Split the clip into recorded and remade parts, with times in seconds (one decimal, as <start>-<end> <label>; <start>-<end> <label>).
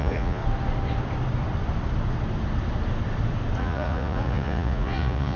0.0-0.4 remade; 0.4-3.6 recorded; 3.6-5.4 remade